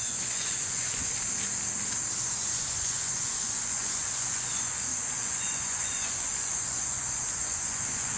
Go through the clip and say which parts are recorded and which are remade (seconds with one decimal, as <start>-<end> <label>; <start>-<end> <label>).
0.0-1.1 remade; 1.1-2.2 recorded; 2.2-8.2 remade